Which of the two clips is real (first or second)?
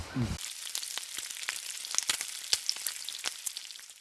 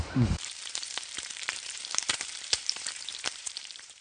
first